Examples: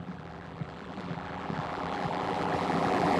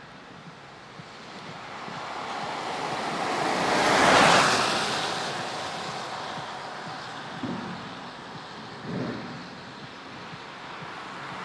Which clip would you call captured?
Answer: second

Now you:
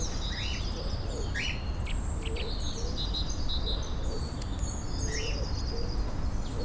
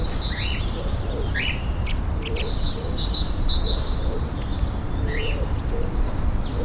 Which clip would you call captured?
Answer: first